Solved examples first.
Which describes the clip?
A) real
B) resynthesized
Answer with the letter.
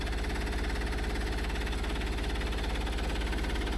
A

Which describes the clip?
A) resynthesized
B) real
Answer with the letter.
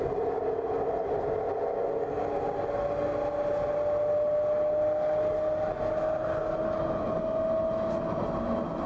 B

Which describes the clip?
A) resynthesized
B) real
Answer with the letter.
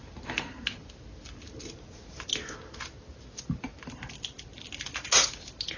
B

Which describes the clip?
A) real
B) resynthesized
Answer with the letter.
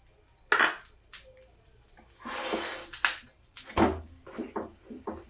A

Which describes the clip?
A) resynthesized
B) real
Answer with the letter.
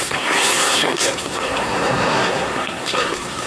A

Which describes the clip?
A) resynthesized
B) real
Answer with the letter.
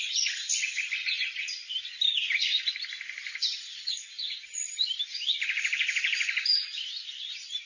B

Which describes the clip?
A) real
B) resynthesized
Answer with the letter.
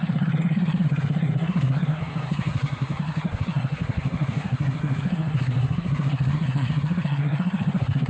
B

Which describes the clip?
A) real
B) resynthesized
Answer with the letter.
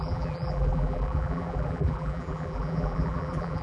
B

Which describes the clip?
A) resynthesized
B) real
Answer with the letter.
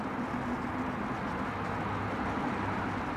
B